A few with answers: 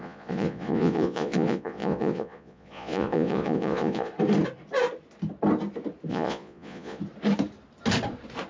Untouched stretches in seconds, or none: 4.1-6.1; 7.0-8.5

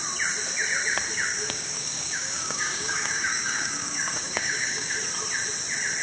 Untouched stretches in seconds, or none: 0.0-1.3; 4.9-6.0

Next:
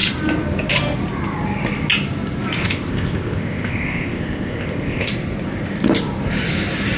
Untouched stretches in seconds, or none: 0.0-2.6; 5.1-7.0

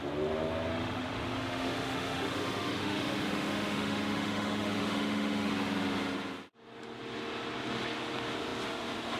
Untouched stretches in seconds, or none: 0.0-0.7; 5.5-9.2

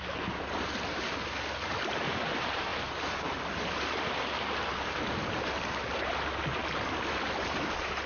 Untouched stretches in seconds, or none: 0.0-8.1

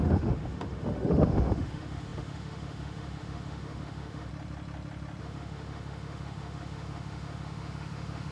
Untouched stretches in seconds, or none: 4.3-5.2

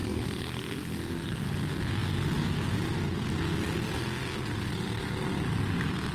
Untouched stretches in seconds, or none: 1.4-6.1